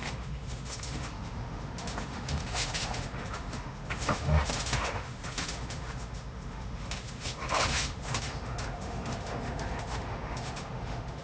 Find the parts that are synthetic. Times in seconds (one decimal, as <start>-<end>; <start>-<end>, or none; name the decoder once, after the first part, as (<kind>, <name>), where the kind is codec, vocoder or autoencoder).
0.0-11.2 (autoencoder, DAC-VAE)